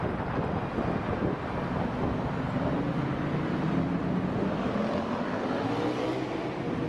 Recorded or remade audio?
recorded